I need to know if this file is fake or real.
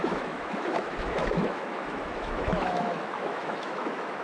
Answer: fake